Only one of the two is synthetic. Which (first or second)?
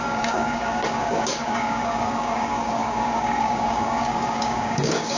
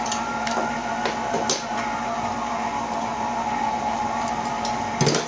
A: first